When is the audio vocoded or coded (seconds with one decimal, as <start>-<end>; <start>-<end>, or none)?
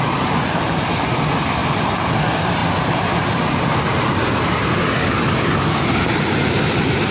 none